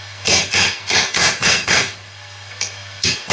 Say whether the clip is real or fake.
fake